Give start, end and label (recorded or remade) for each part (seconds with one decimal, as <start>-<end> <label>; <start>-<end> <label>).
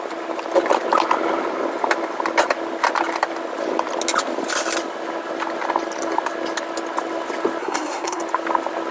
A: 0.0-7.6 recorded; 7.6-8.2 remade; 8.2-8.9 recorded